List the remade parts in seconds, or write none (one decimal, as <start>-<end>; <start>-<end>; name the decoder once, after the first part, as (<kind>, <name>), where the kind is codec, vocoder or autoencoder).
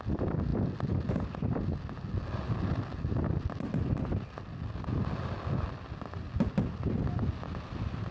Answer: none